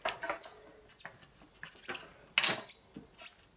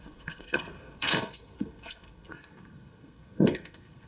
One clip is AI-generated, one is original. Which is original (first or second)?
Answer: first